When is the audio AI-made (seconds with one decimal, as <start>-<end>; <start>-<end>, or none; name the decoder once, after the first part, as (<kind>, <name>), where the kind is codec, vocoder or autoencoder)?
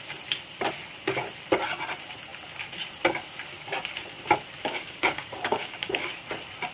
4.7-6.1 (codec, DAC)